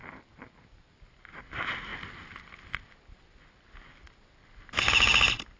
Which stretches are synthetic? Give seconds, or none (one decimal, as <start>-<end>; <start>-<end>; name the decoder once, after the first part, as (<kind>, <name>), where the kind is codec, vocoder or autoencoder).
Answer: none